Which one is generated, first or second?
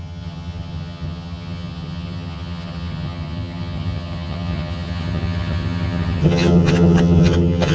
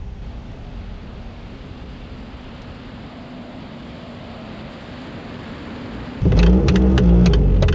first